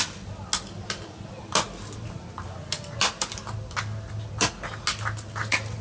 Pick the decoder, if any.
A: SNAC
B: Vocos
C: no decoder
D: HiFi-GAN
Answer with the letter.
C